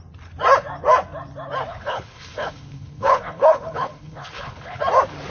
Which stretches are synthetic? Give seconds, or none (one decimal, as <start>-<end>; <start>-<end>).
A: 1.7-4.8